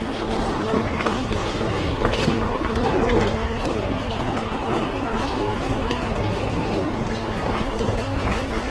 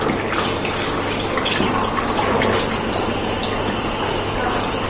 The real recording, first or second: second